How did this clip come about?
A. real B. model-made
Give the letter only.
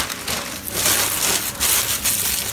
A